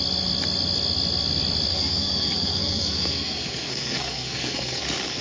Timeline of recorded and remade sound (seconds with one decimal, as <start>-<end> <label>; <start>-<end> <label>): 0.0-1.7 recorded; 1.7-4.8 remade; 4.8-5.2 recorded